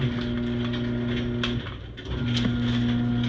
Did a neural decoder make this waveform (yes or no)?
no